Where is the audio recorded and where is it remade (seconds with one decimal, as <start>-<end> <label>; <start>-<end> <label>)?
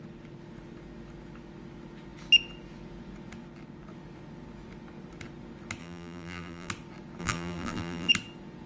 0.0-5.8 recorded; 5.8-6.7 remade; 6.7-7.2 recorded; 7.2-8.1 remade; 8.1-8.7 recorded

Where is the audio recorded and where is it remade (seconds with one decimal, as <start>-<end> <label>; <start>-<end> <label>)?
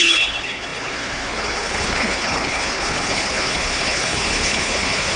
0.0-5.2 remade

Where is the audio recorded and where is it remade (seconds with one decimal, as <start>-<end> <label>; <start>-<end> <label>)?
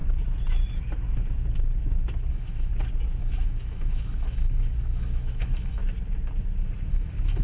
0.0-2.3 recorded; 2.3-2.7 remade; 2.7-3.2 recorded; 3.2-5.8 remade; 5.8-6.9 recorded; 6.9-7.4 remade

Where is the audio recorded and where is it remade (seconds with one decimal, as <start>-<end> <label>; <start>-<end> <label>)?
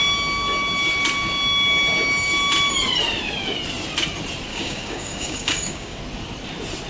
0.0-4.5 recorded; 4.5-6.0 remade; 6.0-6.9 recorded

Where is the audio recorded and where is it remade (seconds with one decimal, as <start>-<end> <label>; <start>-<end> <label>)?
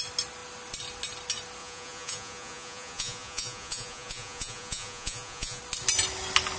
0.0-1.6 recorded; 1.6-5.6 remade; 5.6-6.6 recorded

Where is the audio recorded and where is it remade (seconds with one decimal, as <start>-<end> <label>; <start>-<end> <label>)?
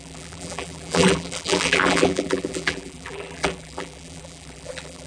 0.0-5.1 remade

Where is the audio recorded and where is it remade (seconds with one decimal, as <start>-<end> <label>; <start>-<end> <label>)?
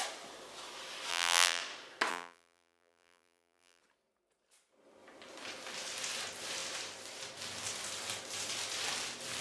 0.0-1.1 recorded; 1.1-1.6 remade; 1.6-2.1 recorded; 2.1-3.8 remade; 3.8-9.4 recorded